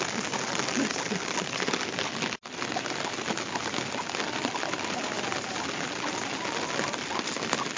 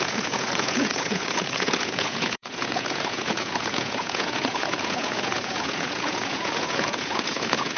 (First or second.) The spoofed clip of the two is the second